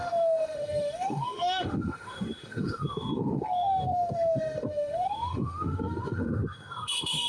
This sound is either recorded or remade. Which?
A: remade